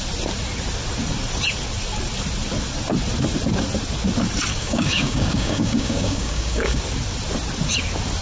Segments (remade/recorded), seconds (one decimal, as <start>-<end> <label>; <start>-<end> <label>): 0.0-4.5 recorded; 4.5-6.8 remade; 6.8-8.2 recorded